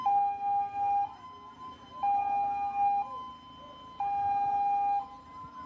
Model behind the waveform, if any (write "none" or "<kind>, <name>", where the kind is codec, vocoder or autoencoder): none